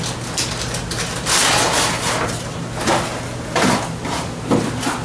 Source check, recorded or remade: recorded